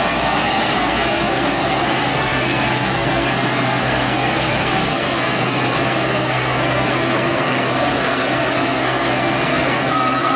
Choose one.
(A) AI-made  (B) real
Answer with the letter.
A